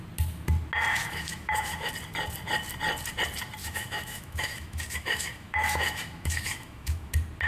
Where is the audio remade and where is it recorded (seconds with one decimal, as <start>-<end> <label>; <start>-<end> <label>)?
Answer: 0.0-0.9 recorded; 0.9-1.9 remade; 1.9-3.6 recorded; 3.6-7.1 remade; 7.1-7.5 recorded